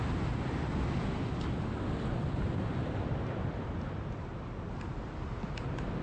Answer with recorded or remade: recorded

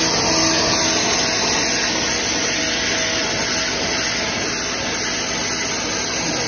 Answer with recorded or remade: recorded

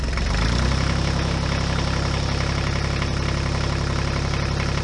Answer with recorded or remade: recorded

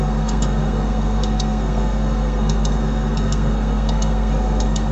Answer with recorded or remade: remade